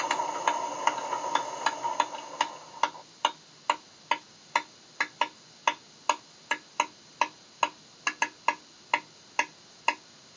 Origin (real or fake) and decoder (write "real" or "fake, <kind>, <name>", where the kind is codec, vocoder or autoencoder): real